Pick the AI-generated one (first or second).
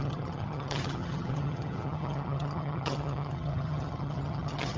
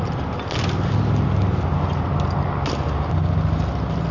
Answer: first